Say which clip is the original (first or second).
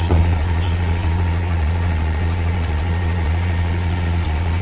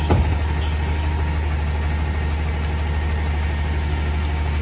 second